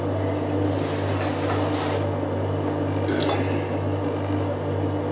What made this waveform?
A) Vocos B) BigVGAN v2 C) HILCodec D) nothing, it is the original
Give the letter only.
D